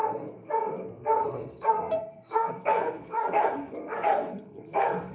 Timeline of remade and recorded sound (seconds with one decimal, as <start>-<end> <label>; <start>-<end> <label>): 0.0-5.1 remade